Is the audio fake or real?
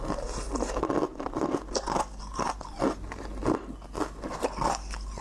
real